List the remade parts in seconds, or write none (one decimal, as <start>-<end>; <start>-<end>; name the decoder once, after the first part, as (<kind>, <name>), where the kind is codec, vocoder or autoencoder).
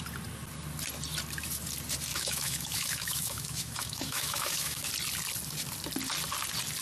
2.1-4.9 (autoencoder, DAC-VAE)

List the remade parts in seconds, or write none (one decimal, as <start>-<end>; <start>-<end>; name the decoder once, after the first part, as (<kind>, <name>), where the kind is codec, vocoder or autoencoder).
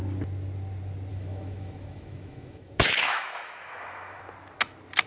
1.1-4.2 (autoencoder, DAC-VAE)